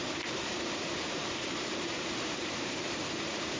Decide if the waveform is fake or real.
fake